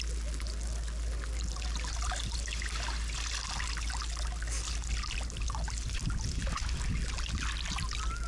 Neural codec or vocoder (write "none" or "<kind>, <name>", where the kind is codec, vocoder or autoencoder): none